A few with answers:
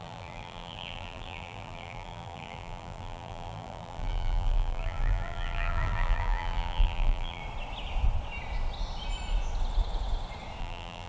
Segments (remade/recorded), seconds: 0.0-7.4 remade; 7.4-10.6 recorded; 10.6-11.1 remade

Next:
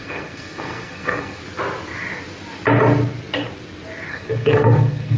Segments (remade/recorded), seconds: 0.0-1.4 remade; 1.4-4.1 recorded; 4.1-5.2 remade

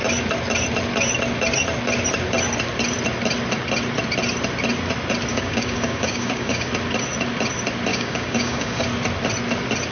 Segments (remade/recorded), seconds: 0.0-5.3 recorded; 5.3-6.7 remade; 6.7-7.9 recorded; 7.9-8.8 remade; 8.8-9.9 recorded

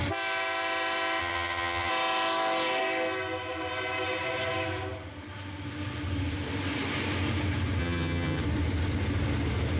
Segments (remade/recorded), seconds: 0.0-1.2 recorded; 1.2-1.9 remade; 1.9-7.8 recorded; 7.8-8.4 remade; 8.4-9.8 recorded

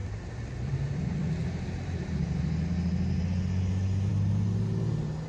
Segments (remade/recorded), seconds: 0.0-0.7 remade; 0.7-5.3 recorded

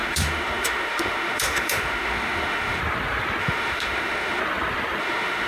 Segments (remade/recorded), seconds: 0.0-2.8 remade; 2.8-3.4 recorded; 3.4-4.4 remade; 4.4-5.0 recorded; 5.0-5.5 remade